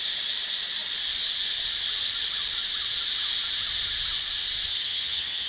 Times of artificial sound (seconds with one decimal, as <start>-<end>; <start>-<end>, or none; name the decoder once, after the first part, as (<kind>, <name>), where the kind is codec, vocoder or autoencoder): 4.7-5.5 (vocoder, HiFi-GAN)